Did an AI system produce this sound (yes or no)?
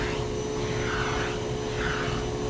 no